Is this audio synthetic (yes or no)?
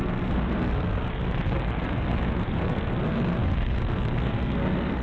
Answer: yes